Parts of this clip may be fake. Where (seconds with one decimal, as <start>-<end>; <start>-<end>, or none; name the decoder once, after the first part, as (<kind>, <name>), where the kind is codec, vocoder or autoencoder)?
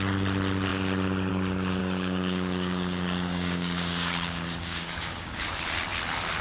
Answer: 1.8-5.6 (codec, DAC)